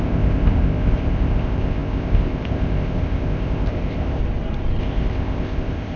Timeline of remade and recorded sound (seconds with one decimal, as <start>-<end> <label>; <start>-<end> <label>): 0.0-4.2 remade; 4.2-4.8 recorded; 4.8-6.0 remade